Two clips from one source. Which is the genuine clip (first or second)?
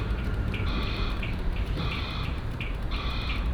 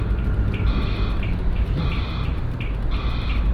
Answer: second